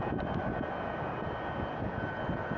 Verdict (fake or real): real